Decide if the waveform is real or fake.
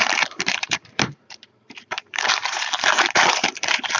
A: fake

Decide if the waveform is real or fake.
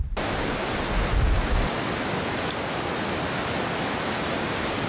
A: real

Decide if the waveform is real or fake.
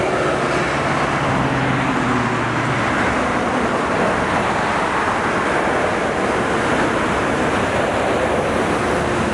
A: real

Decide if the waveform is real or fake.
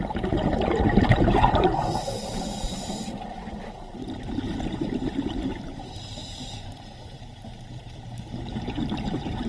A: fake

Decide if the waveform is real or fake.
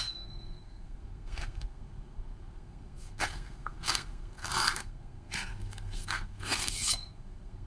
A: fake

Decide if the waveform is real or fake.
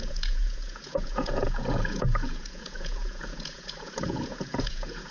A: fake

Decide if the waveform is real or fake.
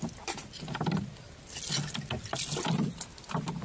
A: real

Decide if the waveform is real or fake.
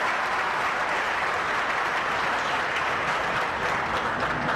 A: real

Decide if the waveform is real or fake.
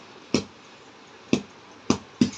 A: real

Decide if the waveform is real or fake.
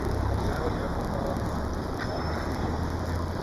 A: real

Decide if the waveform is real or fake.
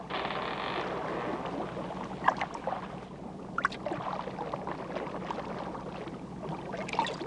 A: real